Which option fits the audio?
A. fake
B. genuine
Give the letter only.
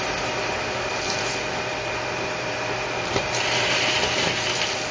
B